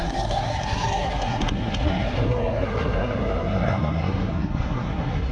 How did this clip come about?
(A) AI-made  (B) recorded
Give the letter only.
A